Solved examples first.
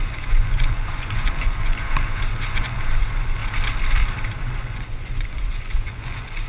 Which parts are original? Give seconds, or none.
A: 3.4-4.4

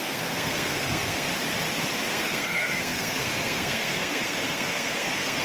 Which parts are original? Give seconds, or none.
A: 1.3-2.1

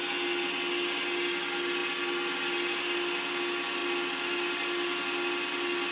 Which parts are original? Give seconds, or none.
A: 0.0-5.9

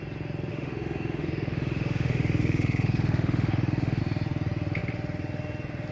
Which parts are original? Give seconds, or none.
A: 0.0-0.5; 4.0-5.9

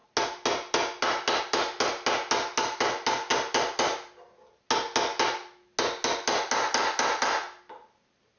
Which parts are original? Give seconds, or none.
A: 0.0-8.4

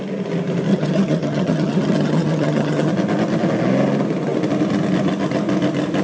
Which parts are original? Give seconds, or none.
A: 0.0-0.7; 2.9-6.0